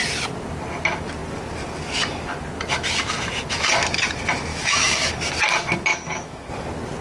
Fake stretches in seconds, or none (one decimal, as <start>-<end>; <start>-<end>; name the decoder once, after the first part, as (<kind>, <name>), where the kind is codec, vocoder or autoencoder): 4.5-5.1 (autoencoder, DAC-VAE); 5.9-6.5